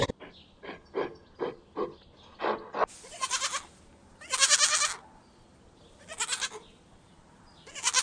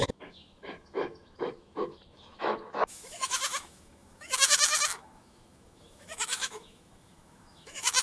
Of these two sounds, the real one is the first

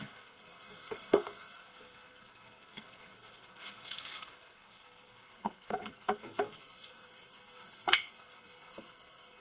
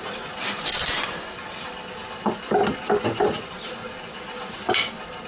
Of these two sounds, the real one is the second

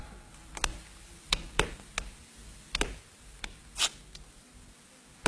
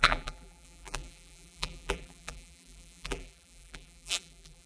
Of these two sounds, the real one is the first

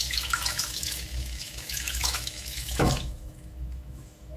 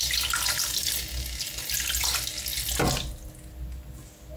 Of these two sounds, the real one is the second